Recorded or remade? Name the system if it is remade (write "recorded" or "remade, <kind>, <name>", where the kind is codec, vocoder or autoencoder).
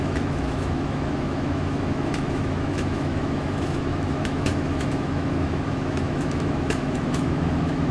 remade, autoencoder, DAC-VAE